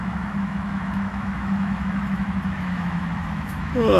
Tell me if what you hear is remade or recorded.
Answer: remade